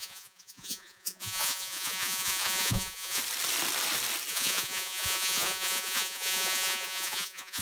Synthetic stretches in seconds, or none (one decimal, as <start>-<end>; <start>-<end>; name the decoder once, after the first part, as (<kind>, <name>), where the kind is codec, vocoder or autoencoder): 0.0-3.2 (vocoder, Vocos); 4.3-7.6